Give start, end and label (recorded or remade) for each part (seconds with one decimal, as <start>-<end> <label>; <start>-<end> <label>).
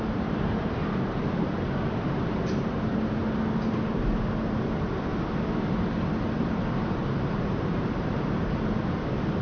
0.0-3.2 remade; 3.2-6.4 recorded; 6.4-9.4 remade